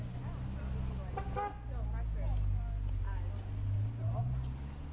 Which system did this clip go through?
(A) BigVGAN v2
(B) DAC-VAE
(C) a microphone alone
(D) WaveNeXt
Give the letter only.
C